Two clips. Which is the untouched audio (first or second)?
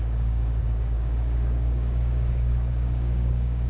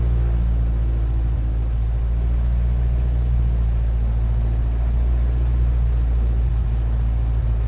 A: second